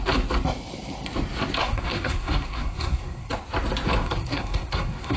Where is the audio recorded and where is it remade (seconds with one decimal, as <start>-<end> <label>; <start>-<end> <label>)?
0.0-1.6 recorded; 1.6-3.3 remade; 3.3-4.0 recorded; 4.0-5.2 remade